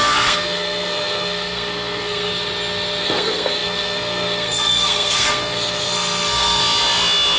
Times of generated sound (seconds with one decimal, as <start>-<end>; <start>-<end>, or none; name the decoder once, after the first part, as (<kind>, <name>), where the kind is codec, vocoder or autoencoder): 0.0-2.3 (codec, SNAC); 3.0-6.6